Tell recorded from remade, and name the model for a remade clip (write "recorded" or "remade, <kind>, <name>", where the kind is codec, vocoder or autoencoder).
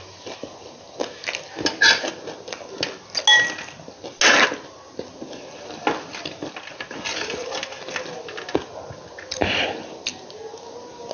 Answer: recorded